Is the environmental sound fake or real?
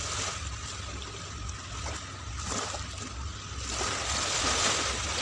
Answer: real